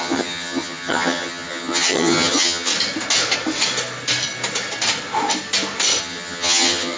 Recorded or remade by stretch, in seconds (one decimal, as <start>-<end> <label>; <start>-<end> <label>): 0.0-2.7 remade; 2.7-6.0 recorded; 6.0-7.0 remade